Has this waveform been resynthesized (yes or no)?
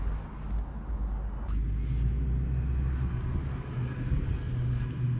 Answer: no